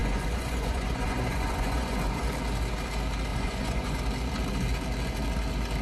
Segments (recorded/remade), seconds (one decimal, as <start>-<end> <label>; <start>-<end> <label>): 0.0-2.3 remade; 2.3-3.3 recorded; 3.3-4.0 remade; 4.0-5.8 recorded